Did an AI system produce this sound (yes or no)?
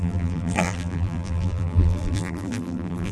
yes